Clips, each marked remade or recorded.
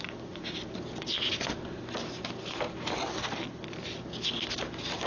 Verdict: recorded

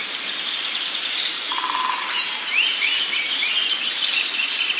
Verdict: remade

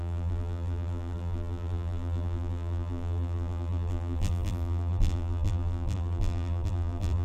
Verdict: remade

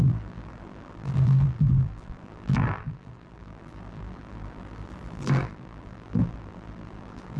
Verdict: remade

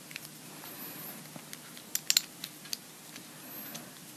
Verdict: recorded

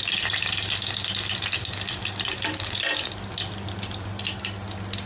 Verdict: recorded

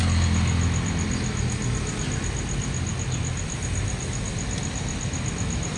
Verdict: recorded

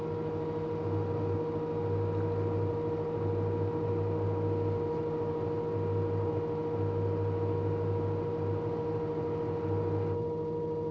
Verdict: recorded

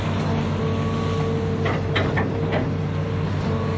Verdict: recorded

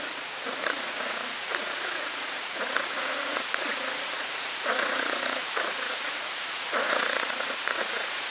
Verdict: remade